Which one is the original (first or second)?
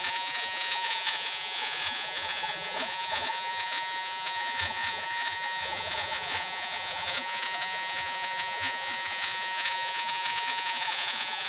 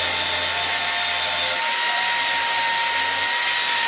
second